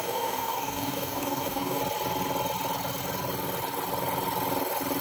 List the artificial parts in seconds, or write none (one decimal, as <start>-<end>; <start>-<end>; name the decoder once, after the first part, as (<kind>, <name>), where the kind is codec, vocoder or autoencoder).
0.0-1.8 (codec, DAC)